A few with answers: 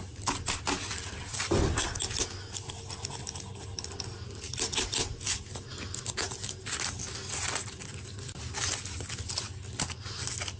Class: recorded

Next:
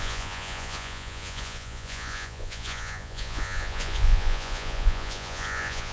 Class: remade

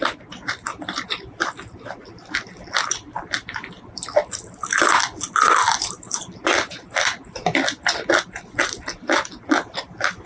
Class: recorded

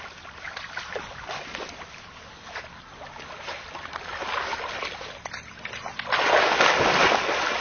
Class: recorded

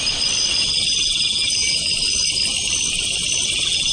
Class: recorded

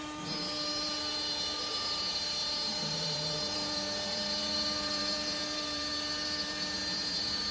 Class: remade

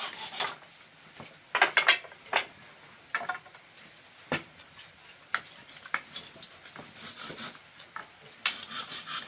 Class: recorded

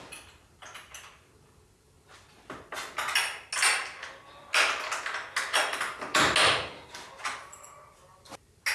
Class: recorded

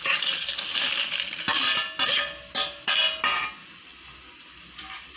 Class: recorded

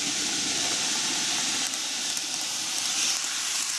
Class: recorded